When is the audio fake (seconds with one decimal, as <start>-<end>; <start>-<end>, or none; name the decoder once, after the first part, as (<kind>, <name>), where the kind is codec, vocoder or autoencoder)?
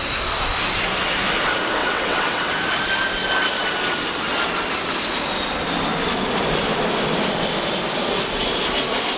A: 1.8-2.5 (vocoder, WaveNeXt)